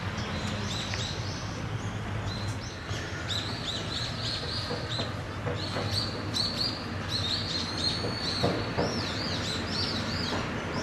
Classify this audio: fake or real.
real